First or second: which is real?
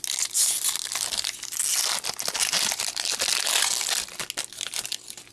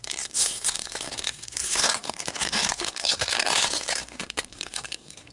first